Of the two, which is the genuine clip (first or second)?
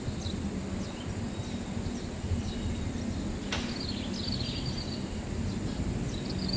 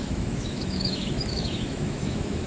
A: first